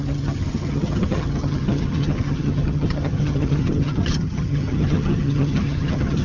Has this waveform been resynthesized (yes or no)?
yes